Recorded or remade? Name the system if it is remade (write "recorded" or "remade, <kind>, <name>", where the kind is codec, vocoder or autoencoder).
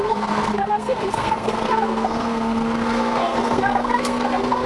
remade, codec, SNAC